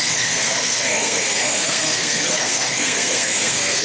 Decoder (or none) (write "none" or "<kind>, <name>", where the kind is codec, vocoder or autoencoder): codec, SNAC